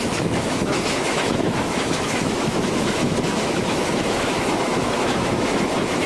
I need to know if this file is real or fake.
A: fake